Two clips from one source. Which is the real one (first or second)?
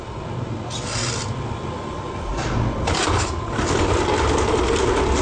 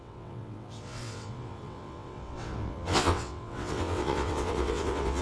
first